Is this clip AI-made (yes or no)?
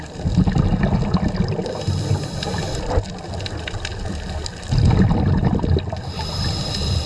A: no